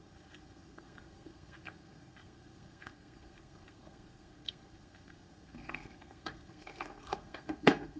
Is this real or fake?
fake